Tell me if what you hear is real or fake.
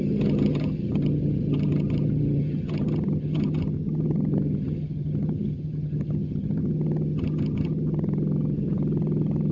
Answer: fake